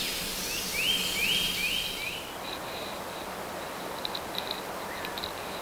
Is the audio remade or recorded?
recorded